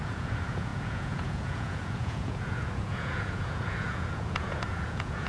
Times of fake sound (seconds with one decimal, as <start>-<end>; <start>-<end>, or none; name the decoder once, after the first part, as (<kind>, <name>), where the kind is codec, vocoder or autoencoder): 0.0-5.3 (vocoder, Vocos)